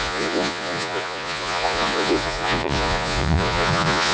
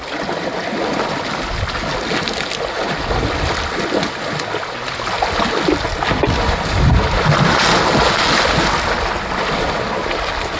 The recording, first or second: second